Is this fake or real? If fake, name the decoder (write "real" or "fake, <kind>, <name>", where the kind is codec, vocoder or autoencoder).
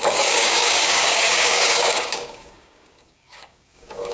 fake, codec, DAC